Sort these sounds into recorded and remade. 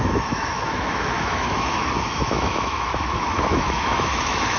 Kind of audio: remade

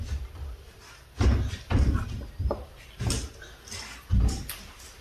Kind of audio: recorded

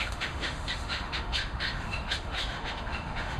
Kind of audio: remade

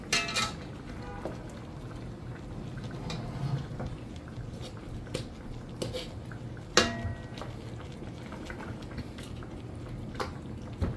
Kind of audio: recorded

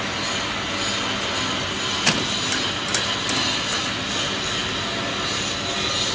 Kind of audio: recorded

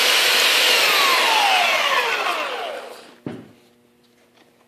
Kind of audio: recorded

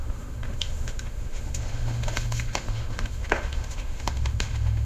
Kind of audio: remade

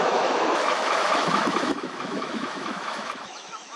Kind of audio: remade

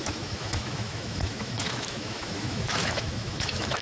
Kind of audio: remade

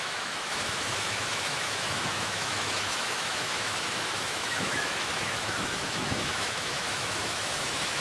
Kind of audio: remade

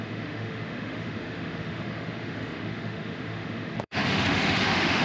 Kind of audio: remade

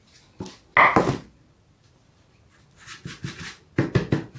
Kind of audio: recorded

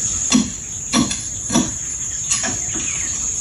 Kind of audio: recorded